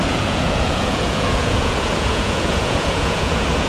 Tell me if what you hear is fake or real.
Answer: fake